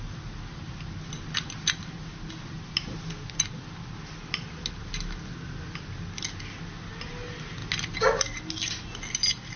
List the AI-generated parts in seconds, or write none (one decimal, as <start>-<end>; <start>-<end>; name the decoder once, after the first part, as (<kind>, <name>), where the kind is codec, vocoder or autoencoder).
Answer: none